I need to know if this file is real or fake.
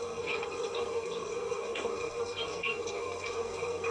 fake